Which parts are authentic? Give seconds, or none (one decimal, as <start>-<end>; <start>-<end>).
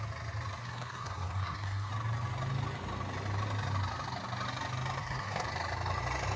0.0-0.6; 1.9-5.0; 5.5-6.4